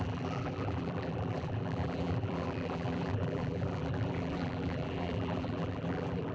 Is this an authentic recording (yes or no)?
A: no